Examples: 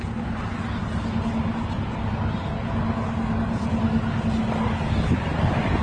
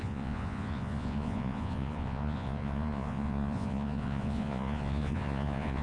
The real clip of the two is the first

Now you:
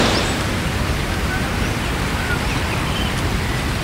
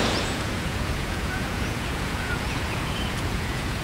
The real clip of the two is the first